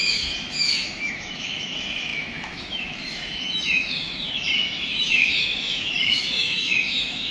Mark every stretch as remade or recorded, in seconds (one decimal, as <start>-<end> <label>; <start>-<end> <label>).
0.0-7.3 remade